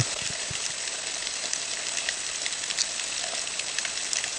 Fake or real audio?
real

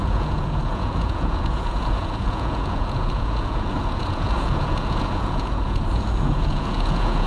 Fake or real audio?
fake